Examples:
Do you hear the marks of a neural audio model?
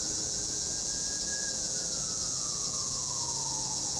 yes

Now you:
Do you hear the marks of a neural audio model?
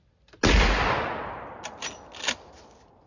no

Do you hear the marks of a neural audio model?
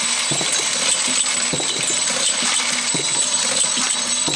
yes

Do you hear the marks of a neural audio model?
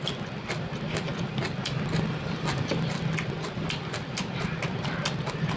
no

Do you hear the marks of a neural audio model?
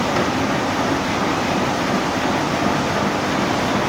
no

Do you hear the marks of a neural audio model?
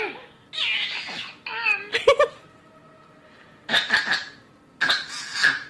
no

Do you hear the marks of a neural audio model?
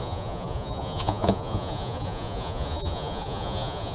yes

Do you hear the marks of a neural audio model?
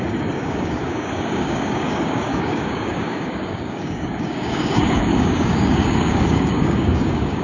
yes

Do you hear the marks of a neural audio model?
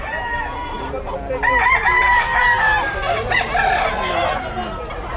no